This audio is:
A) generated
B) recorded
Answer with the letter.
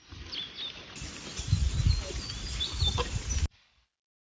B